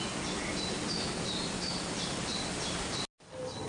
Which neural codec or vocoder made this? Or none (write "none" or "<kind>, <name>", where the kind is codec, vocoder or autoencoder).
none